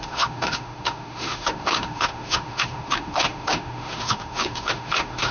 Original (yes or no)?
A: no